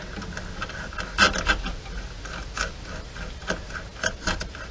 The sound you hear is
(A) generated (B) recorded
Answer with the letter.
B